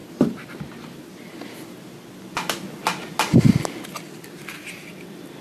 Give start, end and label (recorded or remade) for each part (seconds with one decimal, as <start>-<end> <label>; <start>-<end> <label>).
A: 0.0-5.4 recorded